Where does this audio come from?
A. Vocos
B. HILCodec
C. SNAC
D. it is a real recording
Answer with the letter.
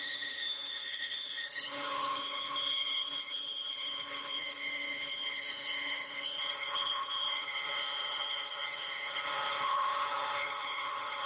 B